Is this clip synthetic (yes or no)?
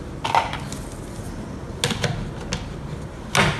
no